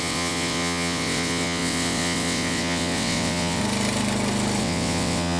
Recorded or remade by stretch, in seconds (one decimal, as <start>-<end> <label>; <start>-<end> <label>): 0.0-3.6 remade; 3.6-4.6 recorded; 4.6-5.4 remade